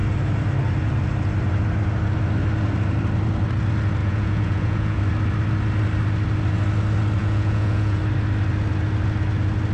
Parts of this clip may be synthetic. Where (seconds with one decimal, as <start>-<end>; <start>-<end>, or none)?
4.0-5.0; 7.2-8.0

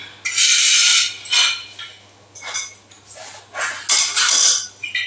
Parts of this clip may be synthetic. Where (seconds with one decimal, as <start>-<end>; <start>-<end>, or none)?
none

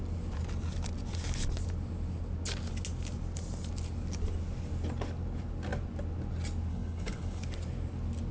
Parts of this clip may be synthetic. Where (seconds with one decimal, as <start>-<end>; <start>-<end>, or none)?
6.7-7.4

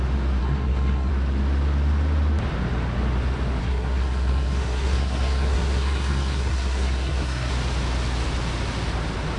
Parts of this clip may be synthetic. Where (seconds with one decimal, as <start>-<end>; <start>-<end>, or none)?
0.4-1.1; 3.6-7.5